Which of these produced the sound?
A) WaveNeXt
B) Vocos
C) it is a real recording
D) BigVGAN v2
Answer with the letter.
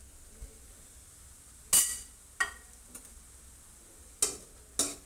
C